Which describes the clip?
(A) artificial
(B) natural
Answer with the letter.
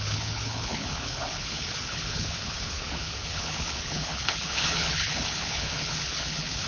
A